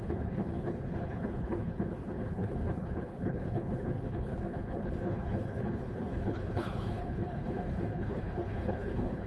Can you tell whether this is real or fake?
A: fake